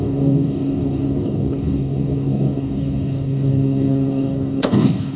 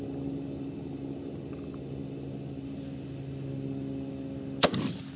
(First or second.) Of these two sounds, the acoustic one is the second